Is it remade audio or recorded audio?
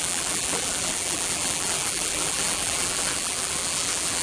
remade